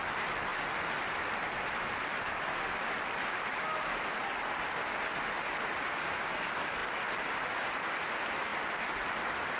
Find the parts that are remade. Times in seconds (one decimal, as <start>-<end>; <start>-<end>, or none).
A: none